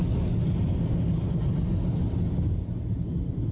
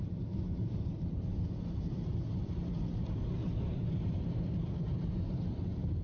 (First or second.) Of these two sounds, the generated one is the second